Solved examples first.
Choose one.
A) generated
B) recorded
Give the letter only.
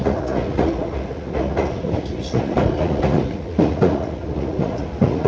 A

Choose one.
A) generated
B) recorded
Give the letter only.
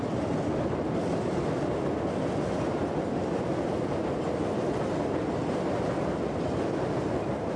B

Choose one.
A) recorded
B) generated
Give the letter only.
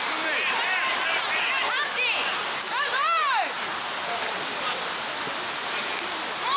A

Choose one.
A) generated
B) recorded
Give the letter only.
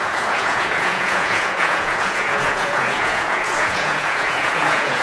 A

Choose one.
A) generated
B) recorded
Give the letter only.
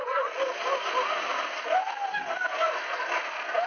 B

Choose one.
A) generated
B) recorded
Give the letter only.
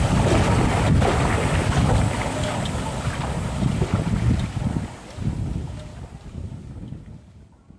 B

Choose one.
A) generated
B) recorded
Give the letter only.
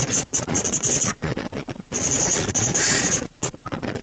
A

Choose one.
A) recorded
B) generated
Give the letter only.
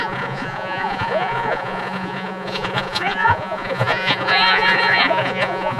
B